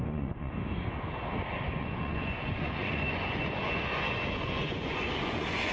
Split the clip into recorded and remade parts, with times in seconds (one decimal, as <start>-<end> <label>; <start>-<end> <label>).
0.0-0.5 remade; 0.5-1.8 recorded; 1.8-5.7 remade